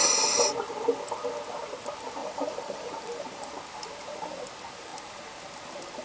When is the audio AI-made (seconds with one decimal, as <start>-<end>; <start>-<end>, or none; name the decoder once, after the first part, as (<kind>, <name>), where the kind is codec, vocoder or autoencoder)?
2.2-3.6 (vocoder, BigVGAN v2)